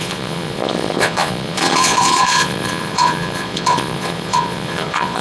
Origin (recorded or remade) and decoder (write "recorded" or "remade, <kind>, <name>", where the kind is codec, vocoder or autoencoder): remade, vocoder, Vocos